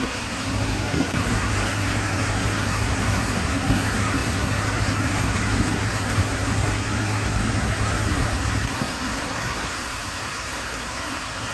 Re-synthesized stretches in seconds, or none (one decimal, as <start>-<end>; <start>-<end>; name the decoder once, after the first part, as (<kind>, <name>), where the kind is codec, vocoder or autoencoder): 0.0-11.5 (codec, SNAC)